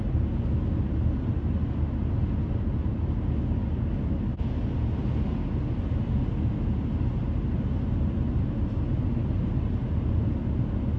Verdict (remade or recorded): recorded